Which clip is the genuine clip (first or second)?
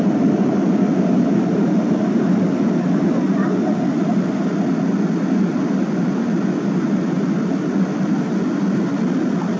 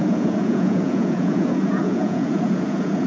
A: first